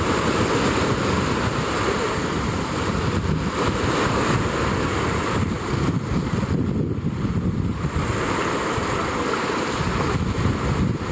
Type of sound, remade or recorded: recorded